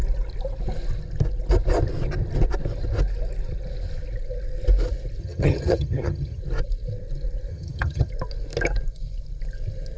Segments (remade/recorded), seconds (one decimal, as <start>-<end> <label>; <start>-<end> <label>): 0.0-5.2 recorded; 5.2-6.4 remade; 6.4-7.5 recorded; 7.5-8.1 remade; 8.1-10.0 recorded